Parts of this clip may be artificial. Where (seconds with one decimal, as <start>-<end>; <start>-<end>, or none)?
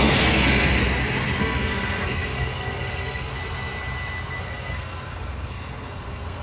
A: 0.0-0.8; 1.4-3.3; 4.4-6.4